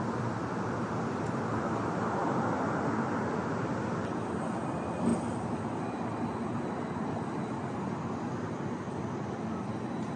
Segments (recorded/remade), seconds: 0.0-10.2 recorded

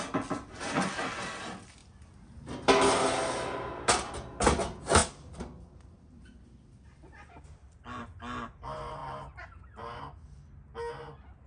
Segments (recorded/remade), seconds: 0.0-11.5 recorded

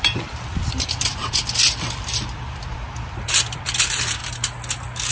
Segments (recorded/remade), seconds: 0.0-4.2 remade; 4.2-5.1 recorded

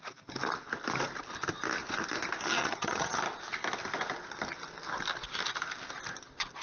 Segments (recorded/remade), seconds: 0.0-2.6 recorded; 2.6-3.2 remade; 3.2-6.6 recorded